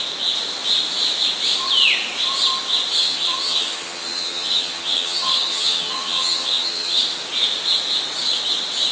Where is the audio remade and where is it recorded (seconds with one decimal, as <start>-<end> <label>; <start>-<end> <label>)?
0.0-3.0 recorded; 3.0-7.0 remade; 7.0-8.9 recorded